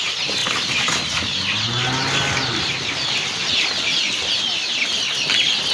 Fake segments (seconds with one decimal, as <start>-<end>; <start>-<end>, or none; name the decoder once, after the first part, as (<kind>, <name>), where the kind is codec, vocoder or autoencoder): none